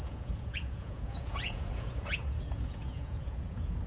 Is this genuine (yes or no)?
no